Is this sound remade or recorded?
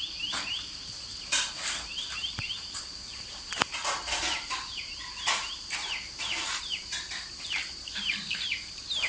remade